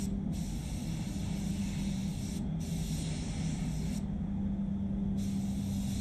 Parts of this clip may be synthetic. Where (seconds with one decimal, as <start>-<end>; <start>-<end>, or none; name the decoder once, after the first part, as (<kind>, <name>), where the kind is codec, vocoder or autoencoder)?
none